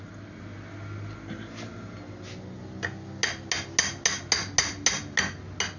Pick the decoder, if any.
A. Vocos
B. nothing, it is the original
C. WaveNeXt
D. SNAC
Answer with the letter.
B